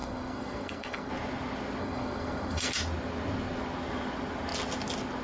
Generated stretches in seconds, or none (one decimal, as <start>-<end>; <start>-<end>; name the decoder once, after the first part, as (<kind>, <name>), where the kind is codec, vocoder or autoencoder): 0.0-1.1 (codec, SNAC); 1.8-2.7